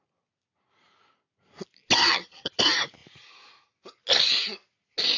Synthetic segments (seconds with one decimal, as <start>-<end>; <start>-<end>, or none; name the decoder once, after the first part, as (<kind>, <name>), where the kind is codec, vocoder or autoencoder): 2.0-2.6 (vocoder, HiFi-GAN)

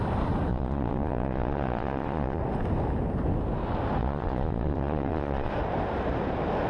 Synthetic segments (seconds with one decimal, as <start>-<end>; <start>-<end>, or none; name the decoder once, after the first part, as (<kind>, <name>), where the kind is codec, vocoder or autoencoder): 0.5-2.4 (vocoder, Vocos); 4.0-5.5